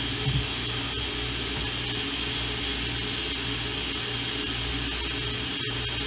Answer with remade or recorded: recorded